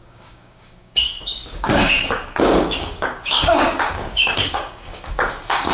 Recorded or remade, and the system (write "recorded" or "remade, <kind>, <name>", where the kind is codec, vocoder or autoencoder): remade, codec, DAC